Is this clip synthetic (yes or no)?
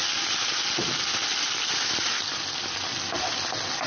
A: no